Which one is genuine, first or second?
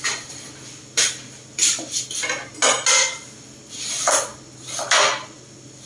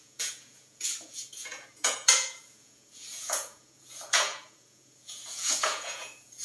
first